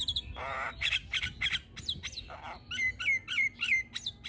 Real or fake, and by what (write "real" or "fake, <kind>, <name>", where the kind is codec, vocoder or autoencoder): real